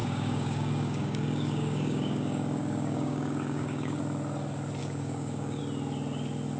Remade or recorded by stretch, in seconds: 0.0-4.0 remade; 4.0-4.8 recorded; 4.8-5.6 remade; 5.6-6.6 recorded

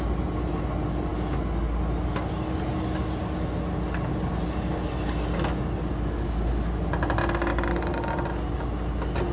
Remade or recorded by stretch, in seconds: 0.0-9.3 recorded

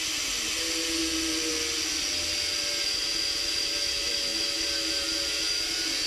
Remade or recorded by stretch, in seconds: 0.0-6.1 recorded

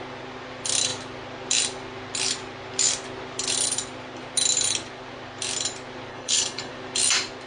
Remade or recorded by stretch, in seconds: 0.0-6.1 recorded; 6.1-6.7 remade; 6.7-7.5 recorded